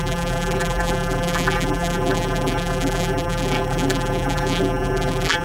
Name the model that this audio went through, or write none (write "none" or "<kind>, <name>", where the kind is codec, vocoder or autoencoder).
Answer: vocoder, BigVGAN v2